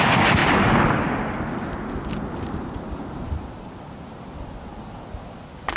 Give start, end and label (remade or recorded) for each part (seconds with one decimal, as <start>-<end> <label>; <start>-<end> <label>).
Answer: 0.0-5.8 recorded